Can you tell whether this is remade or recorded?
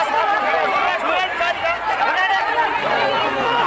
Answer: recorded